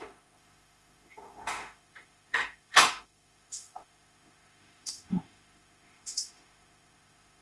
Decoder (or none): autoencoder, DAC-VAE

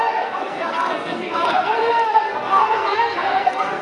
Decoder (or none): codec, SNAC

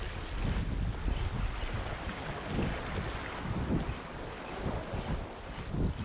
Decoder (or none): none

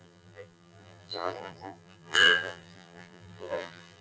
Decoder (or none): vocoder, BigVGAN v2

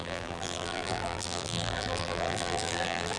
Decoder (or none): vocoder, BigVGAN v2